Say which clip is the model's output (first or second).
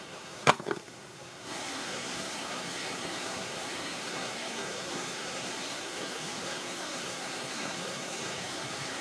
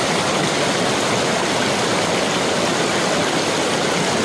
first